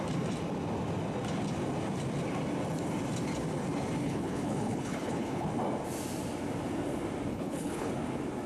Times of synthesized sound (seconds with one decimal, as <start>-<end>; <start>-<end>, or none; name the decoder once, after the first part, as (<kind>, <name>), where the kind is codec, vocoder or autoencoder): 4.0-5.5 (codec, HILCodec); 7.3-7.9